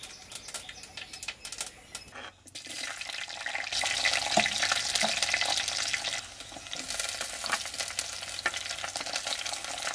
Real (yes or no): yes